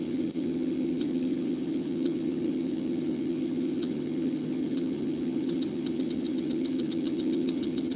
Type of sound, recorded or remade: remade